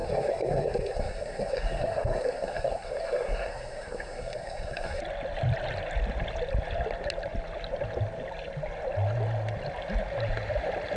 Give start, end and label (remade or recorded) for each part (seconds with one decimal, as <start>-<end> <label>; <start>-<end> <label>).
0.0-5.0 remade; 5.0-11.0 recorded